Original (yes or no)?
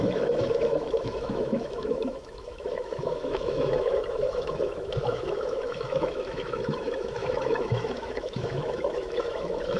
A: no